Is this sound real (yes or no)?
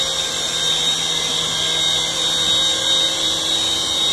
yes